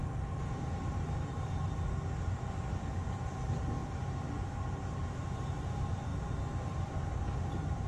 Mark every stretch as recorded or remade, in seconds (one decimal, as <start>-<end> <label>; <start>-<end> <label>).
0.0-7.9 recorded